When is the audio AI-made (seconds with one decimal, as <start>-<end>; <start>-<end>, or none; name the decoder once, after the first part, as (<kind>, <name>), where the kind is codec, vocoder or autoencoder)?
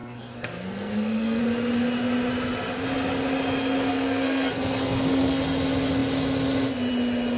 0.0-1.4 (codec, SNAC); 3.9-5.4